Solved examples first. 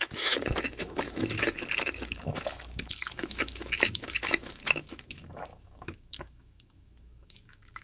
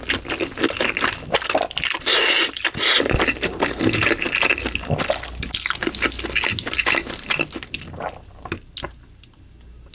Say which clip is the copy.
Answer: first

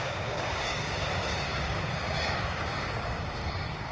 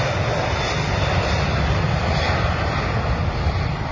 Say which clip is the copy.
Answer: first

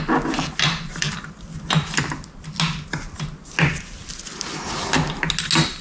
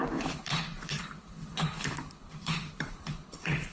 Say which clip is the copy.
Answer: second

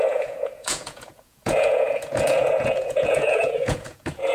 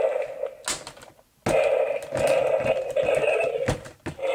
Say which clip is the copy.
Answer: first